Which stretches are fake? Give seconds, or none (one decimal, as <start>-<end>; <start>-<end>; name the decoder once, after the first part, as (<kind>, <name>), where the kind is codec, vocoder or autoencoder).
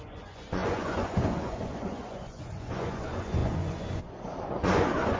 0.0-5.2 (vocoder, Vocos)